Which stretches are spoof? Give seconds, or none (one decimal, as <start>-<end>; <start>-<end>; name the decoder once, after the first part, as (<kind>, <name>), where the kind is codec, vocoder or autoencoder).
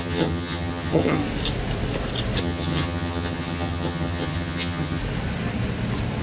0.0-1.2 (vocoder, HiFi-GAN); 2.4-5.0